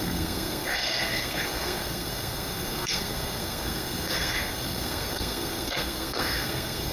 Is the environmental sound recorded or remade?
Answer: remade